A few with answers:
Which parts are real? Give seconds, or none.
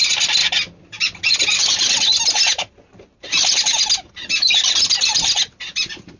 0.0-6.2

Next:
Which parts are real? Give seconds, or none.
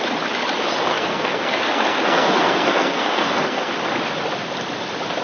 0.0-0.9; 3.7-5.2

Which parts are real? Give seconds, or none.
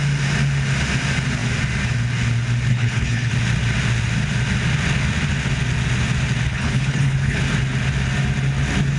0.0-2.7; 3.3-6.5; 7.4-9.0